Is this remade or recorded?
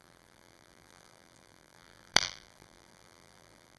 remade